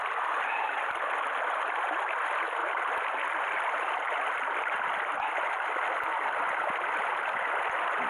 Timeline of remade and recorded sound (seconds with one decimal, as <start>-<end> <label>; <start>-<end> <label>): 0.0-2.6 recorded; 2.6-6.4 remade; 6.4-8.1 recorded